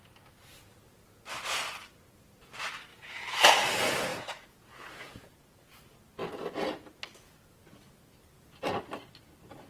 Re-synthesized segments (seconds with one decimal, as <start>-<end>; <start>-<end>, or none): 2.9-3.5; 4.1-5.8